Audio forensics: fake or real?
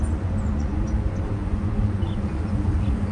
fake